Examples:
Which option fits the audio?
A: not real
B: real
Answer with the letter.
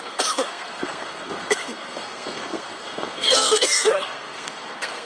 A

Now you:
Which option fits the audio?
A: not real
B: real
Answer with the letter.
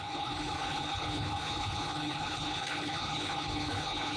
A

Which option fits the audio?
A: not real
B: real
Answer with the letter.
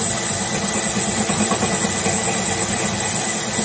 B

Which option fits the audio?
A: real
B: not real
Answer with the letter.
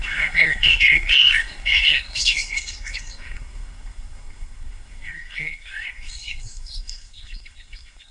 B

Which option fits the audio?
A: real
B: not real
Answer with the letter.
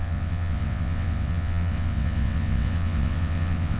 B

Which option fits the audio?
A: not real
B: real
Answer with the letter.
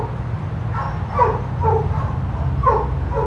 B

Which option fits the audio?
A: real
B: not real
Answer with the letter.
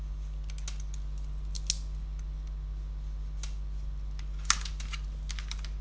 A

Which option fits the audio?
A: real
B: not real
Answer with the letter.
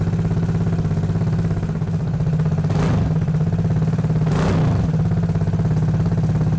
A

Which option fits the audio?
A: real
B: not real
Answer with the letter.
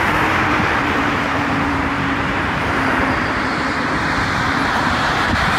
B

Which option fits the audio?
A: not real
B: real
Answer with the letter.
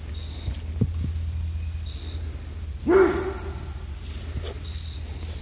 B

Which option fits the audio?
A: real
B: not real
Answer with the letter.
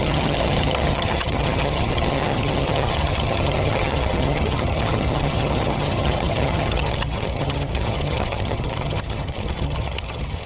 B